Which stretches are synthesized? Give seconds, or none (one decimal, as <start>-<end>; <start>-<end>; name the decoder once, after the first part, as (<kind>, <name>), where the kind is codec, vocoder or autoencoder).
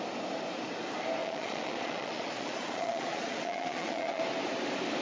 1.2-4.2 (vocoder, Vocos)